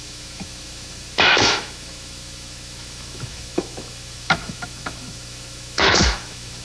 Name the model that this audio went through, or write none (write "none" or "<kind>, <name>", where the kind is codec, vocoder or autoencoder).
autoencoder, DAC-VAE